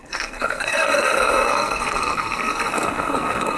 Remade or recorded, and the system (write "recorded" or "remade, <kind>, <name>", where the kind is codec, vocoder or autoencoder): remade, codec, SNAC